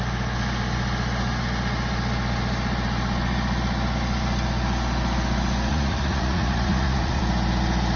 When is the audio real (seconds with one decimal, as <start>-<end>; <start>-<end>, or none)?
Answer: 0.0-5.7; 7.2-8.0